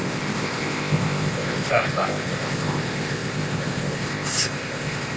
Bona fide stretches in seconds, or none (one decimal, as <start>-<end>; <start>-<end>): none

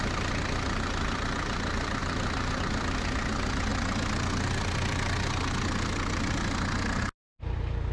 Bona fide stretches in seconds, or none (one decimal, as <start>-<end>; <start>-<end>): 0.0-2.0; 2.6-7.9